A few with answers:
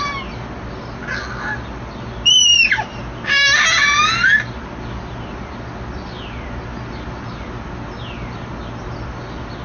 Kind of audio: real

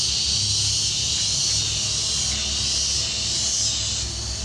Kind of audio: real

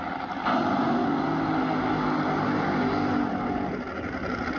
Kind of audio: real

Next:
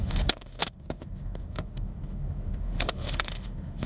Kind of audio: fake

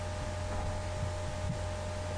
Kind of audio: real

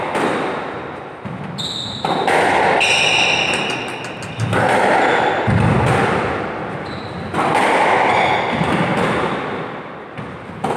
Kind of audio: real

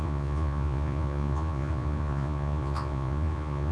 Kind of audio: fake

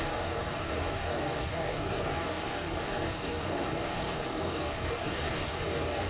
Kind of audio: fake